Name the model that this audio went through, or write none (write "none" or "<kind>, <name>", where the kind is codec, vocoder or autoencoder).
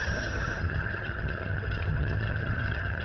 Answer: vocoder, HiFi-GAN